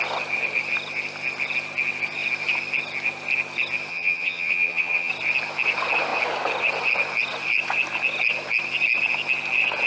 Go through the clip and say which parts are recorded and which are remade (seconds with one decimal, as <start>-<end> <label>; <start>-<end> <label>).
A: 0.0-3.9 recorded; 3.9-5.1 remade; 5.1-9.9 recorded